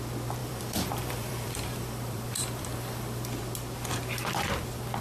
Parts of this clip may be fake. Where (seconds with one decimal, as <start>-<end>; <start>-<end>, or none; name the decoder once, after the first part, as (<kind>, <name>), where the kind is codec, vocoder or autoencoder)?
0.4-3.4 (vocoder, BigVGAN v2)